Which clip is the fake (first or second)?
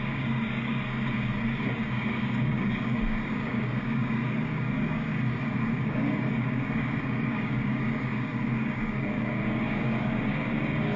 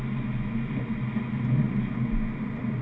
first